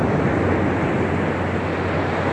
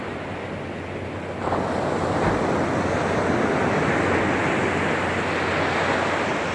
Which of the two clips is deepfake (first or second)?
first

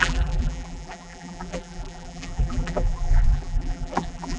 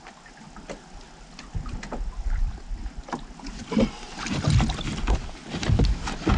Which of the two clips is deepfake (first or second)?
first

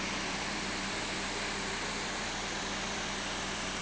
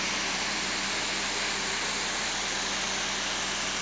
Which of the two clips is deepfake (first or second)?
first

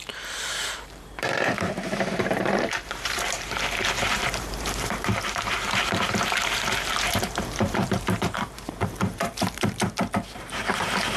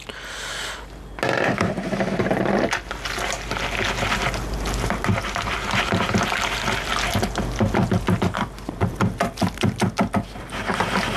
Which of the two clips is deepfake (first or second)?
first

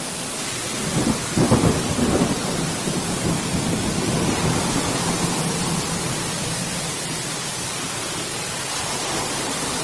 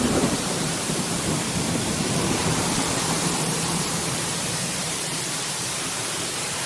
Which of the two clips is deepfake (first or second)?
second